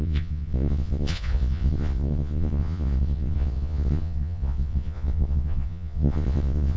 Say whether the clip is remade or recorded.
remade